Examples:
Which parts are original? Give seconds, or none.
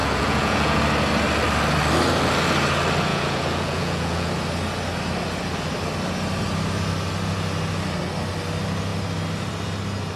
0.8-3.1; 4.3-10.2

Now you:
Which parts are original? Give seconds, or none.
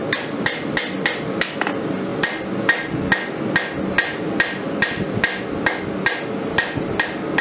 0.7-7.4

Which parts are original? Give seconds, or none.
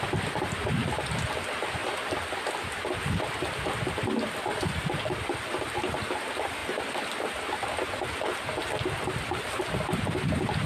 0.0-1.8; 5.8-6.6; 7.9-8.6; 9.6-10.7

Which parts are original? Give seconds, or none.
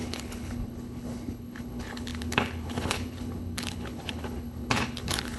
none